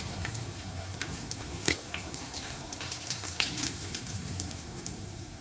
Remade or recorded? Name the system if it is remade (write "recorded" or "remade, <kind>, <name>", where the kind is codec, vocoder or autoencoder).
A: remade, codec, SNAC